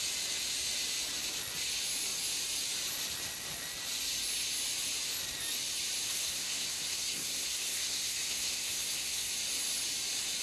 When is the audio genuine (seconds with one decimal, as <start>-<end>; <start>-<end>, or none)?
0.0-6.1; 9.3-10.4